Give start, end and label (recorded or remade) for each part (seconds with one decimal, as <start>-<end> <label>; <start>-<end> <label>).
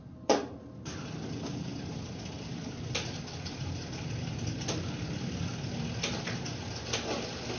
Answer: 0.0-7.6 recorded